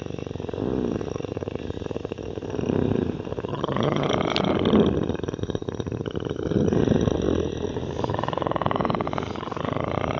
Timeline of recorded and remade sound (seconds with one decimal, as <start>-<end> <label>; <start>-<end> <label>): 0.0-3.5 recorded; 3.5-4.1 remade; 4.1-10.2 recorded